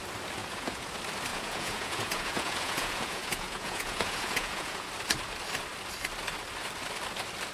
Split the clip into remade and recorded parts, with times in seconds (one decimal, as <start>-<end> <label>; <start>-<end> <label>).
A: 0.0-0.4 recorded; 0.4-0.9 remade; 0.9-1.3 recorded; 1.3-4.9 remade; 4.9-7.5 recorded